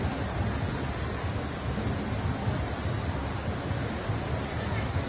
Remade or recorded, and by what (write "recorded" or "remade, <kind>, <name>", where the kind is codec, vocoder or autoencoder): recorded